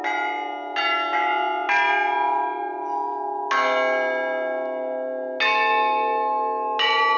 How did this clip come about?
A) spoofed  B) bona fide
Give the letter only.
B